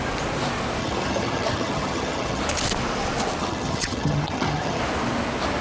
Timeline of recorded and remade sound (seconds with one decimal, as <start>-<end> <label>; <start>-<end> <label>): 0.0-0.8 recorded; 0.8-2.4 remade; 2.4-3.4 recorded; 3.4-4.8 remade; 4.8-5.6 recorded